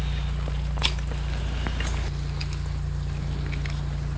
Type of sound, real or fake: real